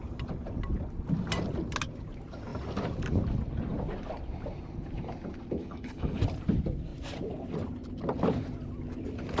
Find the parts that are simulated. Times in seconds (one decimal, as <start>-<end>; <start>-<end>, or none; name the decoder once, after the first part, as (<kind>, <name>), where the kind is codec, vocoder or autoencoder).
5.6-6.2 (codec, HILCodec)

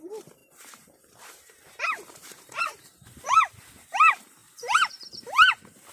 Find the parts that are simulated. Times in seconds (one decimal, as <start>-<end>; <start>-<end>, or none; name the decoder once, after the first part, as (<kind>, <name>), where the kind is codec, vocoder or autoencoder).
0.0-5.9 (vocoder, BigVGAN v2)